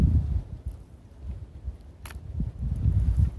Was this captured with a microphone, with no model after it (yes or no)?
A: yes